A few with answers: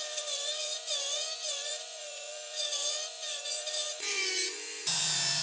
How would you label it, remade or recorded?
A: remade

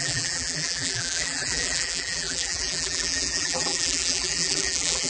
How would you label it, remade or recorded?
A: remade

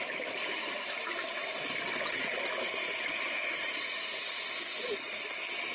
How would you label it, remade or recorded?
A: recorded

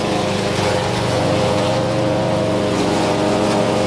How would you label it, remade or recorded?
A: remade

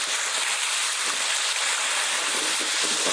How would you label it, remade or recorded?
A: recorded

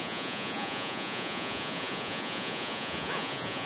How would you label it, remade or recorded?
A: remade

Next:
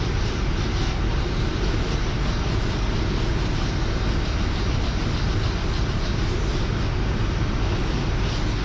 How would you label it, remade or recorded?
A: recorded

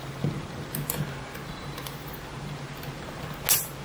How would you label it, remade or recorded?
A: recorded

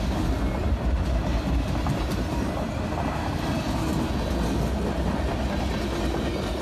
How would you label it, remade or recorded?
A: recorded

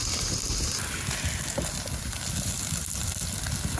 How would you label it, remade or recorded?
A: recorded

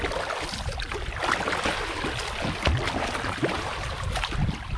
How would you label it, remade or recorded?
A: recorded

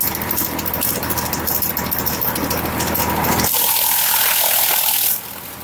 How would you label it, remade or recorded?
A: recorded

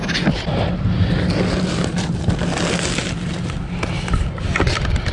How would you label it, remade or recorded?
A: recorded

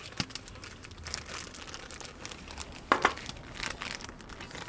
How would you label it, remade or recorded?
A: recorded